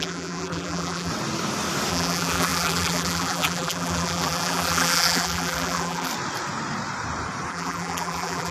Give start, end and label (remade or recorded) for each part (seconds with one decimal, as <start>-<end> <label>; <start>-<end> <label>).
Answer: 0.0-1.1 remade; 1.1-1.9 recorded; 1.9-6.1 remade; 6.1-7.5 recorded; 7.5-8.5 remade